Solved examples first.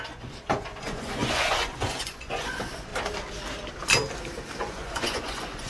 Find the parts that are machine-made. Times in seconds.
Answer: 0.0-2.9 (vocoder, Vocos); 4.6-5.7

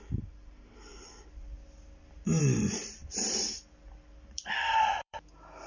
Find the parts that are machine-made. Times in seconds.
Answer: 0.0-5.7 (vocoder, BigVGAN v2)

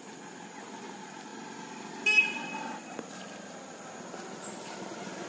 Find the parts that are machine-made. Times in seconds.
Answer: none

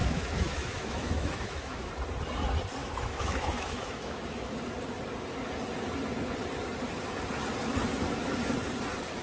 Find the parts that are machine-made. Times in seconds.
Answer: 0.0-1.9 (autoencoder, DAC-VAE); 2.8-4.6

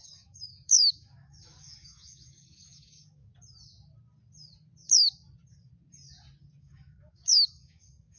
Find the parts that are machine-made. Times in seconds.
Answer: 0.0-3.3 (autoencoder, DAC-VAE); 6.6-8.2

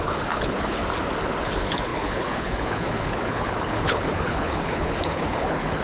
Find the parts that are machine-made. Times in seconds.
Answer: 0.0-0.8 (codec, HILCodec); 1.4-5.8